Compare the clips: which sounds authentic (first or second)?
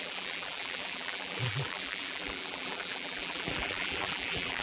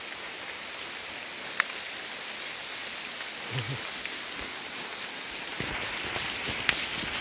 second